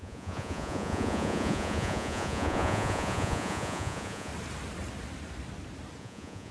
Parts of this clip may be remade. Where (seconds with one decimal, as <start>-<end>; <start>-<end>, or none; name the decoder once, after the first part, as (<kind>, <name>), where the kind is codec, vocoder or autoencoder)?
0.0-4.3 (vocoder, Vocos); 6.0-6.5